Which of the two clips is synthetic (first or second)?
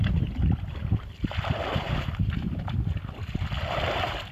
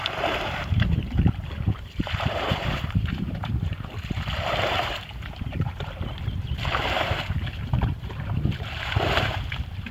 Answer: second